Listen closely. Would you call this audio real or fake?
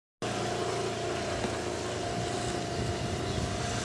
real